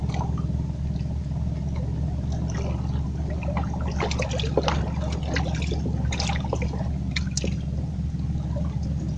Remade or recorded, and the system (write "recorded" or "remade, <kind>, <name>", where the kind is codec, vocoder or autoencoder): recorded